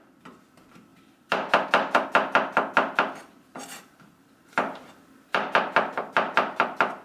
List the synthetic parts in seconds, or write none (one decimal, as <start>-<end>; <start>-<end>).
0.0-7.0